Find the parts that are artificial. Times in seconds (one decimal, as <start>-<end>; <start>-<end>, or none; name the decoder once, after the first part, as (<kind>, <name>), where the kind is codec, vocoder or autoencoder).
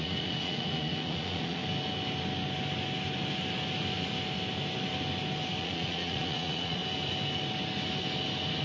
0.0-1.6 (vocoder, Vocos); 5.6-6.8